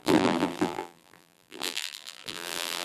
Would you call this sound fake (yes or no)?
yes